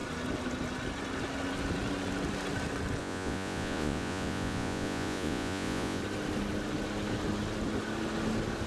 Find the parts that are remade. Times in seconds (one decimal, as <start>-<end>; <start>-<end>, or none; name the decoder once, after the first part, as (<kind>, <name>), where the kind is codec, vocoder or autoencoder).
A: 3.0-6.0 (vocoder, Vocos)

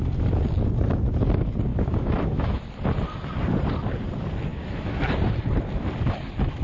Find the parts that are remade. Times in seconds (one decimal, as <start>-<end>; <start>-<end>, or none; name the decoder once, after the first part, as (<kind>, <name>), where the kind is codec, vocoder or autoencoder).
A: 1.7-2.6 (autoencoder, DAC-VAE); 4.5-5.1

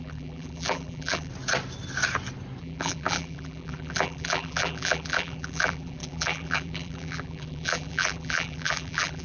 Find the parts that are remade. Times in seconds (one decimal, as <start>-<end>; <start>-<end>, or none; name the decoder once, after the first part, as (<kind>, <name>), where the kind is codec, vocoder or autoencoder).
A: 0.0-1.3 (vocoder, BigVGAN v2); 2.6-9.2

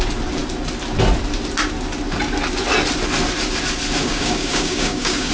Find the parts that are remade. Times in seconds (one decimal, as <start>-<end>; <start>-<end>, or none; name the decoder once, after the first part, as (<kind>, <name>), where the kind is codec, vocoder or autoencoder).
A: 4.0-5.3 (codec, DAC)

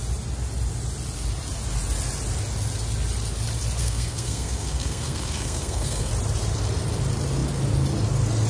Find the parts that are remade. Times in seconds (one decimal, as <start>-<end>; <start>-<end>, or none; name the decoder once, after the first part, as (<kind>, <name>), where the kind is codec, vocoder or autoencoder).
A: 3.8-6.1 (codec, SNAC)

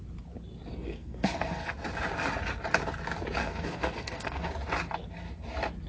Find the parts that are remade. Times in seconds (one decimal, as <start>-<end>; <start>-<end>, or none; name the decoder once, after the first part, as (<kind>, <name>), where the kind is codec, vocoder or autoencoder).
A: 0.7-1.7 (codec, SNAC); 3.4-4.5

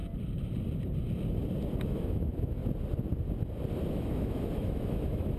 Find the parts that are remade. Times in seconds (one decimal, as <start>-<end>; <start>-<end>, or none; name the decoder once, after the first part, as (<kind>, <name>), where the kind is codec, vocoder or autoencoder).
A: 1.8-2.6 (autoencoder, DAC-VAE); 3.9-5.4

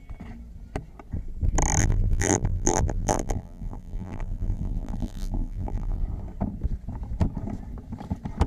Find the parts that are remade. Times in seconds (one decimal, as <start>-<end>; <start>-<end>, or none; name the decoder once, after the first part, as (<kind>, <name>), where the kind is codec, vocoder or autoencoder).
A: 1.8-6.0 (vocoder, BigVGAN v2)